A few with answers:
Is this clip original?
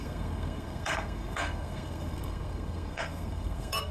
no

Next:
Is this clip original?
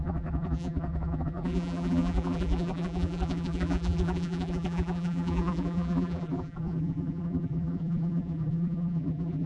no